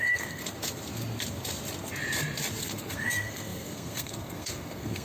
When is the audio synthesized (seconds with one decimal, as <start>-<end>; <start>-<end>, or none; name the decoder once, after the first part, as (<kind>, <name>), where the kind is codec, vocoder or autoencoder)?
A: 0.0-0.4 (codec, SNAC); 2.6-5.0